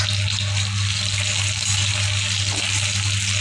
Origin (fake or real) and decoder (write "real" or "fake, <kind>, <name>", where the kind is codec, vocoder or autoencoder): real